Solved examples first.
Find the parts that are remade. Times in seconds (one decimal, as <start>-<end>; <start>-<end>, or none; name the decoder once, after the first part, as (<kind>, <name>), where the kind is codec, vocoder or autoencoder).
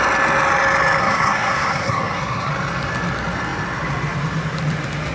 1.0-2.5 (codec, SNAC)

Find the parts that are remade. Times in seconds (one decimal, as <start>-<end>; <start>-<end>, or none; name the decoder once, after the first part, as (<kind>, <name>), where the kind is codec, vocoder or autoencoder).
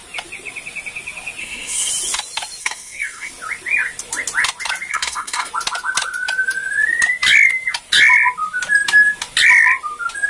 1.4-1.9 (codec, SNAC); 2.6-3.3; 4.9-5.5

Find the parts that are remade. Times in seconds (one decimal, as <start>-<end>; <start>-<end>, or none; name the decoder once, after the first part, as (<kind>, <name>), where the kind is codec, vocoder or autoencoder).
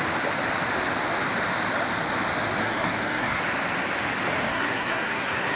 2.6-3.4 (codec, SNAC); 4.5-5.6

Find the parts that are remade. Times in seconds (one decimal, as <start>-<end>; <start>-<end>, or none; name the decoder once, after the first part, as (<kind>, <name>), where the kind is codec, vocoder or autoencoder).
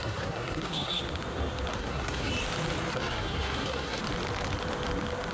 0.0-1.0 (codec, SNAC); 1.7-2.3; 2.9-4.0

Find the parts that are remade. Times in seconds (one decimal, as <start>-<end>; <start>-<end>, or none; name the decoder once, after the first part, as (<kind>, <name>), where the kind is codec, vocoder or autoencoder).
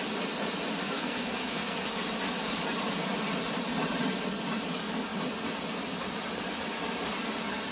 0.8-1.9 (codec, SNAC)